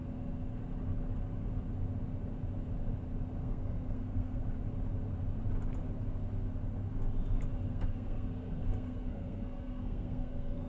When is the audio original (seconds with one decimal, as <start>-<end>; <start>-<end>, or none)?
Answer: 0.0-3.4; 4.4-7.7